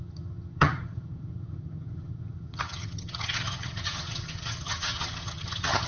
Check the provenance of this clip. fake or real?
fake